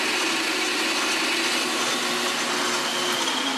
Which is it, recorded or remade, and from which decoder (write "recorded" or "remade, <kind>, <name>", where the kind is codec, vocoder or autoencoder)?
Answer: recorded